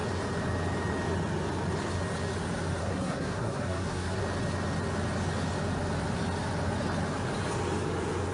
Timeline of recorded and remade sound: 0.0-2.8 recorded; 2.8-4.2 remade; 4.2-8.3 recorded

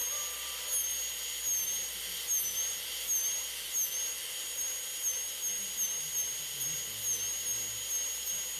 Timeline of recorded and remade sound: 0.0-8.6 recorded

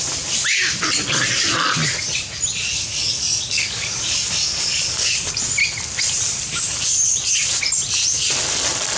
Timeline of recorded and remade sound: 0.0-2.7 recorded; 2.7-5.4 remade; 5.4-9.0 recorded